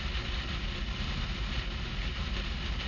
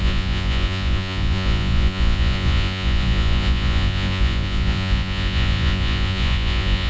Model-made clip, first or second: second